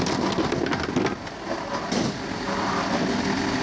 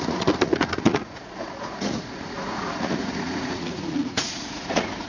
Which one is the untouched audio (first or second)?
first